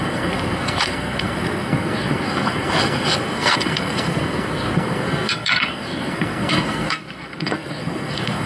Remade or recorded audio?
remade